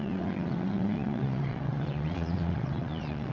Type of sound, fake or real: fake